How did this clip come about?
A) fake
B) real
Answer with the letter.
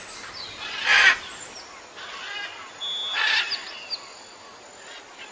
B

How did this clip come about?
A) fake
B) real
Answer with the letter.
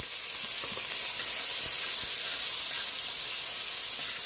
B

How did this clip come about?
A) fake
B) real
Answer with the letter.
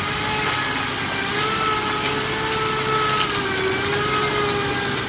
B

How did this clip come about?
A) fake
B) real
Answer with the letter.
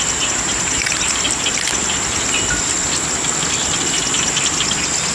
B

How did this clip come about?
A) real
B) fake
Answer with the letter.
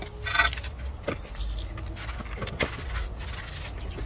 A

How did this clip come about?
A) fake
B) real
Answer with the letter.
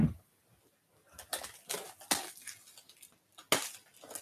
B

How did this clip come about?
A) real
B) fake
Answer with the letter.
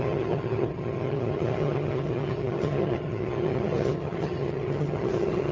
B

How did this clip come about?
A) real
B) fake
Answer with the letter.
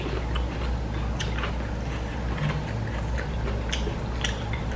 A